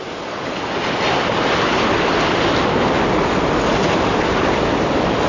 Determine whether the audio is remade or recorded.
recorded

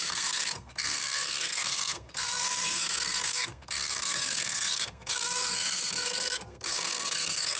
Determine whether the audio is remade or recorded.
remade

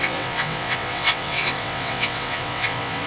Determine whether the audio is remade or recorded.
remade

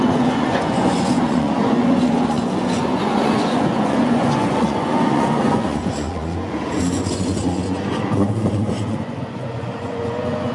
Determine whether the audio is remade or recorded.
remade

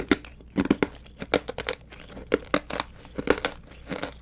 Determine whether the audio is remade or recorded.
recorded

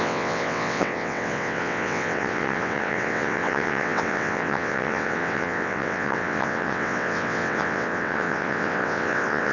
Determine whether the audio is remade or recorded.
remade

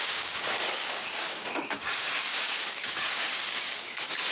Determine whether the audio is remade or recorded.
remade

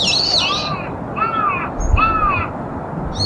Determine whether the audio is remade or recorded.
recorded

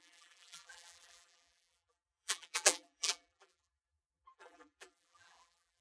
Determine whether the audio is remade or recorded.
remade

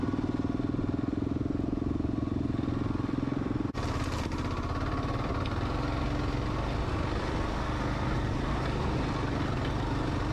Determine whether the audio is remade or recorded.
recorded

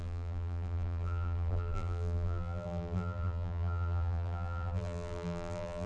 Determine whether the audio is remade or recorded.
remade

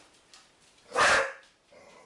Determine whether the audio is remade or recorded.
recorded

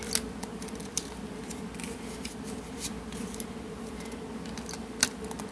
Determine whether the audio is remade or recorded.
recorded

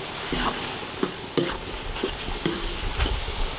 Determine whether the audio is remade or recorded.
recorded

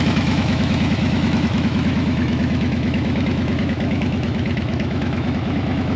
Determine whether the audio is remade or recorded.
remade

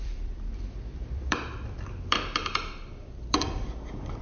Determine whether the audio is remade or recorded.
remade